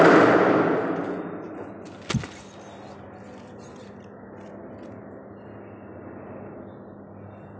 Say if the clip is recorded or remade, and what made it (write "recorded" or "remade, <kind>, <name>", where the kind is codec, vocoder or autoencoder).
recorded